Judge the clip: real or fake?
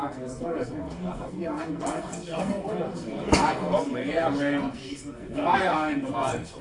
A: fake